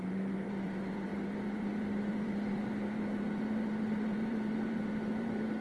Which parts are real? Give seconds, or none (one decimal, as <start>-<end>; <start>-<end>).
none